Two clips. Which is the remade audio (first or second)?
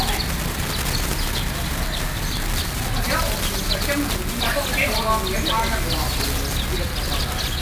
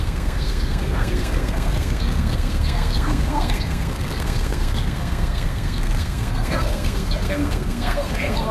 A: second